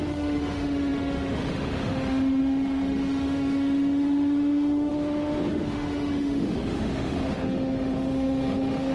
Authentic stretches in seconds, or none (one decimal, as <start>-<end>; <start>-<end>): 4.9-5.5